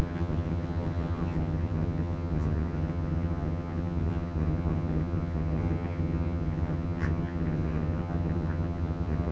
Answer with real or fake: fake